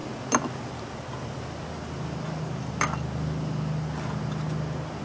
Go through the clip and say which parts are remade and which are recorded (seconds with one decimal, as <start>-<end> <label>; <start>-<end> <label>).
0.0-5.0 recorded